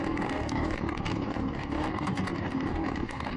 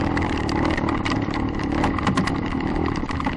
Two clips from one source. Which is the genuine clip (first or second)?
second